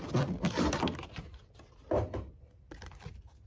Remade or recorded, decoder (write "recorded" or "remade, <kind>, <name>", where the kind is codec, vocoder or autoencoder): recorded